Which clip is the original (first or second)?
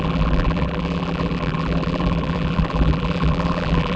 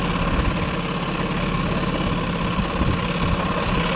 second